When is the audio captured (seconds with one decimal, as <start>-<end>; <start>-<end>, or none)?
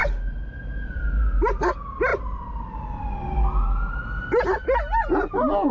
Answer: 0.0-5.7